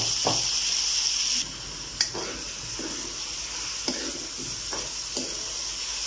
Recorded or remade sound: recorded